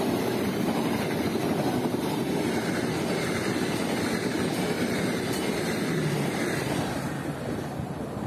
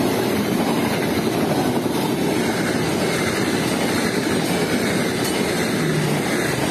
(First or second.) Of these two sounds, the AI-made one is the first